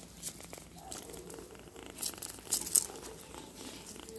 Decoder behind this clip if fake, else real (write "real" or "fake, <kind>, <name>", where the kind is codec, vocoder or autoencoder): real